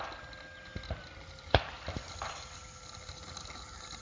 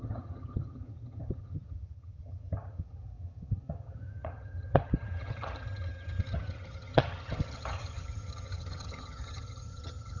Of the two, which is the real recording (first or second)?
first